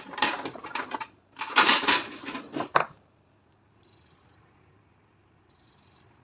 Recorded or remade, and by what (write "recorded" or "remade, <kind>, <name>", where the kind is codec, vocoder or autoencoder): remade, vocoder, BigVGAN v2